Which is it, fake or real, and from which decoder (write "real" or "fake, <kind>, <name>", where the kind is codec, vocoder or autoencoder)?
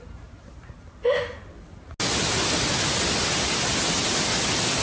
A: real